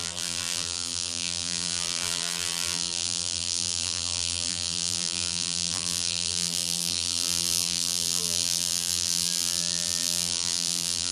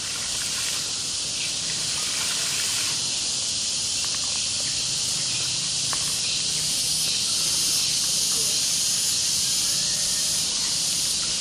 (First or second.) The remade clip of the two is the first